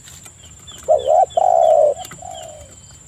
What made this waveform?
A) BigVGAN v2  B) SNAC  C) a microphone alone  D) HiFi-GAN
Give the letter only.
C